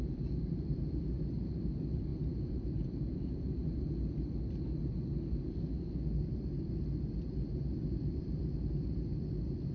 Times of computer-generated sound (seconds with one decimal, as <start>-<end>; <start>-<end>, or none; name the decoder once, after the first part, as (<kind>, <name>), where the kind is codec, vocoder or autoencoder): 0.0-3.6 (vocoder, BigVGAN v2); 6.8-9.7